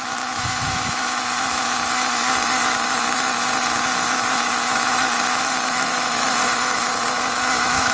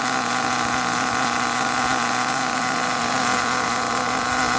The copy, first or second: first